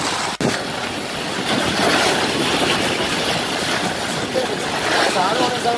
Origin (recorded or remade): recorded